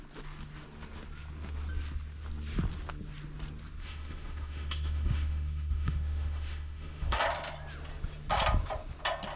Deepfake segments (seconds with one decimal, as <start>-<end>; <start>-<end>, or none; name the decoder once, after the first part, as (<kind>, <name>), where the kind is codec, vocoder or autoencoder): 3.8-7.2 (autoencoder, DAC-VAE)